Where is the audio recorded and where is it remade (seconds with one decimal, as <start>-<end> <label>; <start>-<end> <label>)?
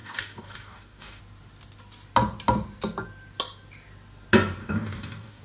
0.0-1.2 remade; 1.2-4.6 recorded; 4.6-5.4 remade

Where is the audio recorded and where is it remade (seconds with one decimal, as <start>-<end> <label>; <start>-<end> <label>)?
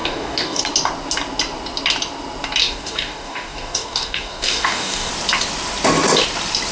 0.0-0.6 remade; 0.6-2.6 recorded; 2.6-5.1 remade; 5.1-6.7 recorded